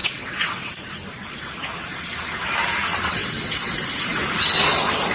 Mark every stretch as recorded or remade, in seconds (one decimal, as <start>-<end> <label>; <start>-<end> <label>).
0.0-0.7 remade; 0.7-3.1 recorded; 3.1-4.2 remade; 4.2-5.1 recorded